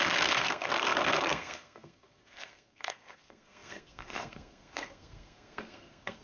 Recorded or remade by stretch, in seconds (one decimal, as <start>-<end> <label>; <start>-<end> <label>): 0.0-6.2 remade